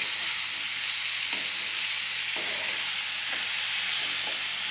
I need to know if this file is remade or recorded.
recorded